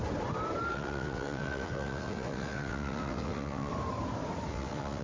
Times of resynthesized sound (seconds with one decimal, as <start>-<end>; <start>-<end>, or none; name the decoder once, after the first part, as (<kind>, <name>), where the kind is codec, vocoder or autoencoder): 0.7-3.7 (vocoder, WaveNeXt); 4.5-5.0